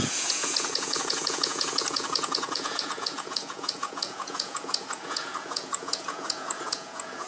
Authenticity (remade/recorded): remade